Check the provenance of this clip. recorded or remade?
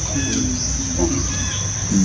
recorded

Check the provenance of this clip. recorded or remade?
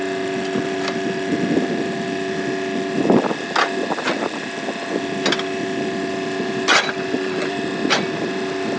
recorded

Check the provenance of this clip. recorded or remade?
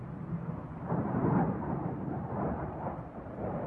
remade